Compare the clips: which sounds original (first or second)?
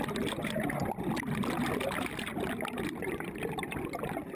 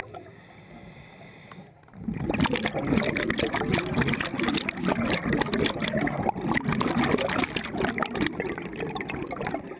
second